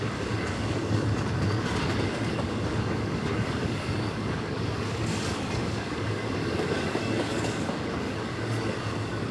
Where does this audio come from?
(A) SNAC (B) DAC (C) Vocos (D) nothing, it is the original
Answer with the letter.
B